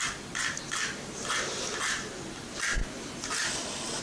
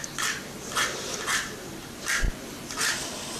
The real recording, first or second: first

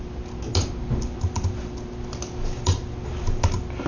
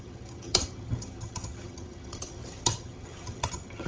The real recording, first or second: first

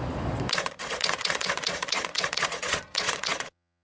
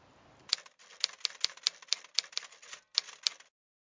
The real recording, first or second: second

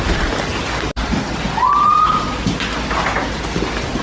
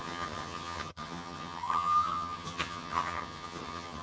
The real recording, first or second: first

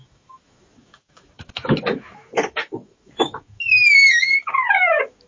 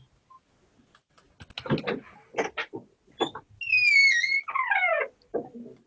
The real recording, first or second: second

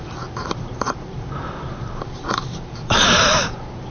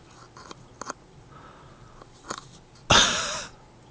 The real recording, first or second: second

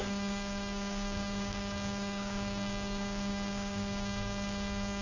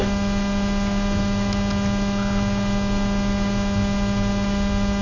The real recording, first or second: second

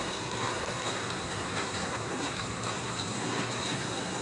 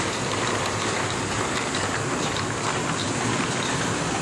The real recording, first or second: second